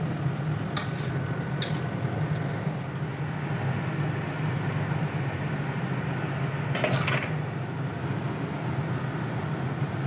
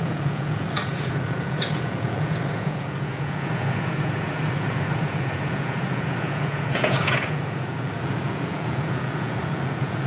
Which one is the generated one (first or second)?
second